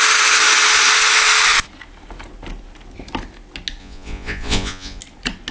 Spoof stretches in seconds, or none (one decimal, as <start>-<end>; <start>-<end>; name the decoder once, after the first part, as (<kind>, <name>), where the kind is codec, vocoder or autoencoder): 3.8-5.0 (vocoder, Vocos)